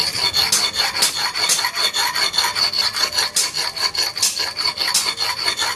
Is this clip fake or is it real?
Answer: real